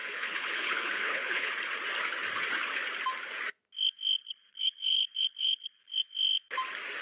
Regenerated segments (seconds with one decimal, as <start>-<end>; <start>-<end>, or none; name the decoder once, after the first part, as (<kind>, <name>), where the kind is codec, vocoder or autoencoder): 0.0-1.5 (codec, HILCodec); 4.2-5.8